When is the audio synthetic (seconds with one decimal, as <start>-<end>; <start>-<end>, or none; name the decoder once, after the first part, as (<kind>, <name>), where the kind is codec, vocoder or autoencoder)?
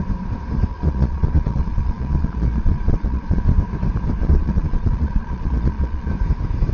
0.7-3.4 (vocoder, Vocos); 4.2-6.1